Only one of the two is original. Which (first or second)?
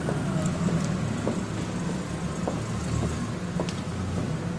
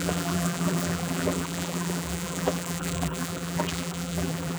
first